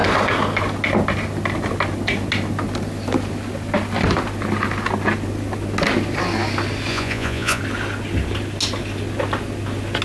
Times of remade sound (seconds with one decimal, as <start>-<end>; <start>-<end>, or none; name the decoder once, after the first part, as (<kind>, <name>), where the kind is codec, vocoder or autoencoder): 6.9-7.6 (vocoder, Vocos)